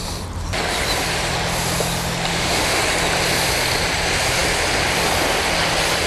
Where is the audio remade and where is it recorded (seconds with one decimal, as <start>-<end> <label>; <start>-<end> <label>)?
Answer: 0.0-2.3 recorded; 2.3-2.8 remade; 2.8-6.1 recorded